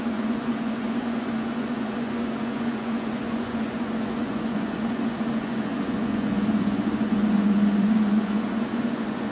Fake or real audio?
fake